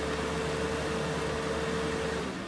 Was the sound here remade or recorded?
recorded